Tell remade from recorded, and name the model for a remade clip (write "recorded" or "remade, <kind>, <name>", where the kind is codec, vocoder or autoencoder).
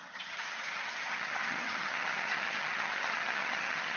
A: remade, vocoder, HiFi-GAN